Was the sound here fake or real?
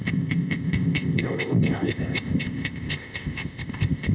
fake